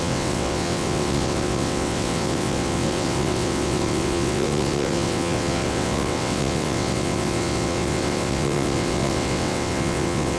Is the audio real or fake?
fake